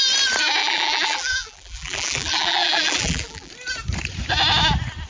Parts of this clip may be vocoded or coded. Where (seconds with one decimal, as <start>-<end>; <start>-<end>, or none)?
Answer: 0.6-3.5